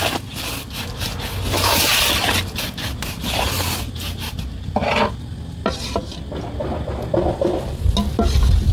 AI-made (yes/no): no